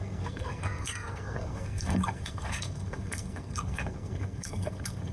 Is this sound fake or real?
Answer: fake